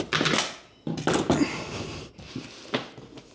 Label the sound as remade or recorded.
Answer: recorded